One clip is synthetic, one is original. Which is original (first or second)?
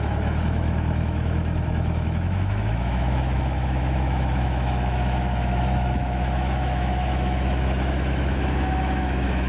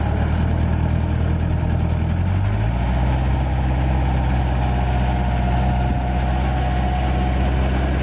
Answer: second